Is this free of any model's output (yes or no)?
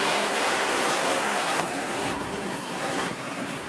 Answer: no